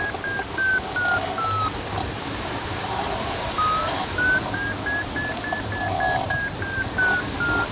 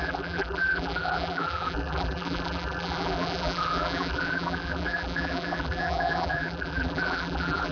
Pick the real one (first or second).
first